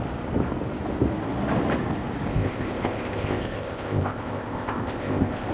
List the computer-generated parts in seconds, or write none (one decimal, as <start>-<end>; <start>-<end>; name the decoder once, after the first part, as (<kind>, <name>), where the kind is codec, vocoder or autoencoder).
2.3-5.5 (codec, ZipCodec)